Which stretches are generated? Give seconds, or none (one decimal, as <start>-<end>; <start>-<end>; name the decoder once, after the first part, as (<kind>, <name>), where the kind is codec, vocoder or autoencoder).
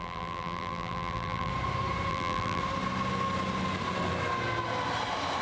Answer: 0.0-1.5 (vocoder, BigVGAN v2); 2.1-2.6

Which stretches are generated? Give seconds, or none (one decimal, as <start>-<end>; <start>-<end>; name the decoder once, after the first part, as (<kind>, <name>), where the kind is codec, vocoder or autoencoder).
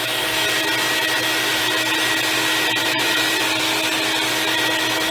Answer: 2.8-3.6 (vocoder, BigVGAN v2)